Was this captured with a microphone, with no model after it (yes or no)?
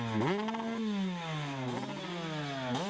yes